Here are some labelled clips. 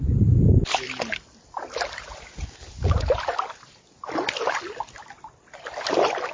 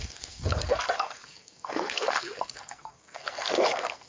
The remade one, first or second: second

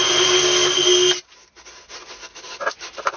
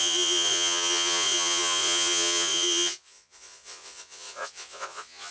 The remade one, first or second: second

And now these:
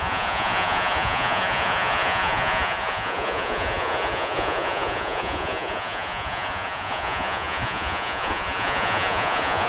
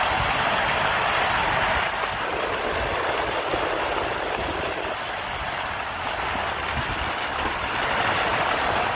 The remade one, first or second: first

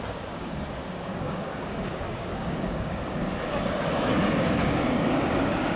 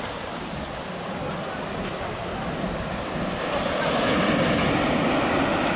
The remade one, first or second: first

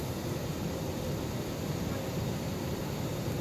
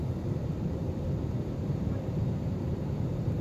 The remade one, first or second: second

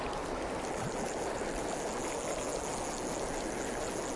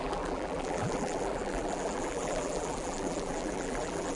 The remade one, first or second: second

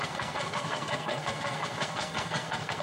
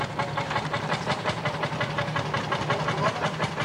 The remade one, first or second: first